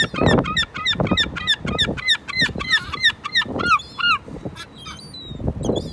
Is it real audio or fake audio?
real